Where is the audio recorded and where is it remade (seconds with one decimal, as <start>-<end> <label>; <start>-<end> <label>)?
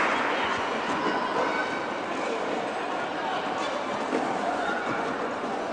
0.0-1.3 remade; 1.3-4.5 recorded; 4.5-5.7 remade